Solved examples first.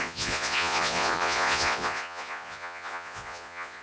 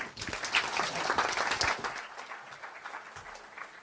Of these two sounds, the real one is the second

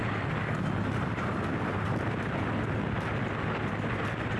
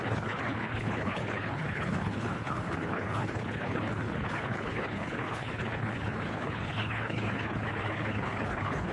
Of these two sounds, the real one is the first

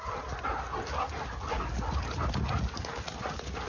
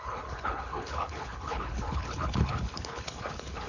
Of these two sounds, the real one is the first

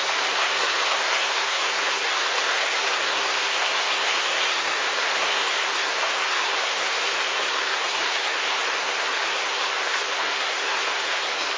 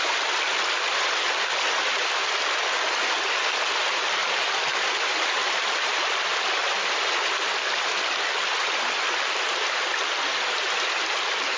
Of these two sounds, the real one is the second